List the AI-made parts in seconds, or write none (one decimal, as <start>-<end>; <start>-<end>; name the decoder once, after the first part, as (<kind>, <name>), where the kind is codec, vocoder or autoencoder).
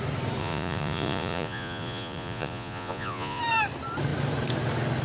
0.4-3.4 (vocoder, Vocos)